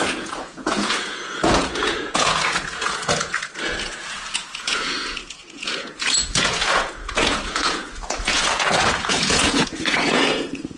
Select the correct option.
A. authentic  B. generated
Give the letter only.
B